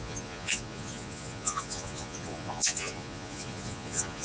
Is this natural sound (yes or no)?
no